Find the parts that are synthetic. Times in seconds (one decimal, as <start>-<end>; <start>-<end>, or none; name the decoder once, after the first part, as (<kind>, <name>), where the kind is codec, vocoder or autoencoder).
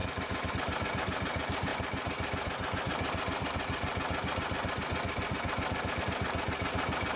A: 0.0-1.7 (vocoder, BigVGAN v2); 6.0-7.2